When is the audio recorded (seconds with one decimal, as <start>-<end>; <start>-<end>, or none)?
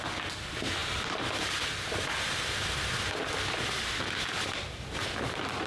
0.0-5.7